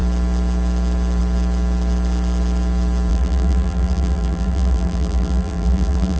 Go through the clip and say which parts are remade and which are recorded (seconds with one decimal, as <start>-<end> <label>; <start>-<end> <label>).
0.0-3.1 recorded; 3.1-6.2 remade